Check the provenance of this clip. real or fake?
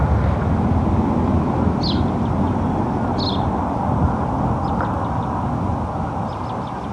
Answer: real